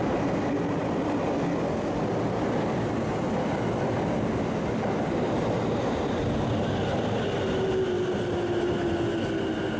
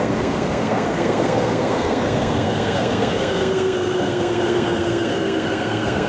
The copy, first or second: second